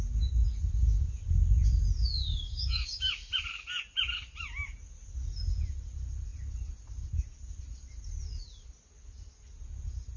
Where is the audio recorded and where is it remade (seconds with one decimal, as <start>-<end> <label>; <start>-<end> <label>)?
0.0-2.5 recorded; 2.5-3.1 remade; 3.1-10.2 recorded